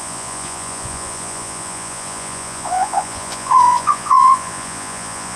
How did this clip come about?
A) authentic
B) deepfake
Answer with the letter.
B